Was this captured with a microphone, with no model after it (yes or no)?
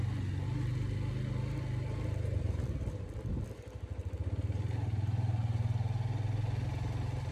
yes